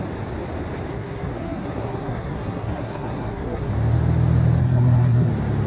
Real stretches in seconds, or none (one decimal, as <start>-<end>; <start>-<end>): 0.0-0.9; 3.7-4.6; 5.3-5.7